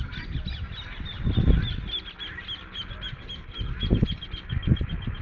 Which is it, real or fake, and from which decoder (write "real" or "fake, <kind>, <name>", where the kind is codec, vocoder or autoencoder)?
real